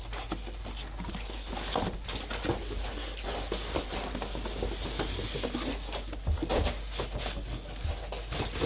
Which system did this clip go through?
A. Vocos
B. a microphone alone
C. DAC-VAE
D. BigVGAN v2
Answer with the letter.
B